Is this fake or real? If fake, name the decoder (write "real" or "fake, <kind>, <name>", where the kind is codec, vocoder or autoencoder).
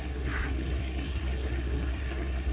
fake, codec, SNAC